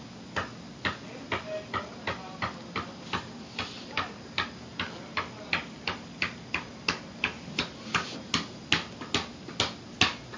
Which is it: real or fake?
real